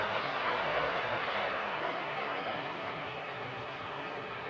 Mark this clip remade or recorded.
remade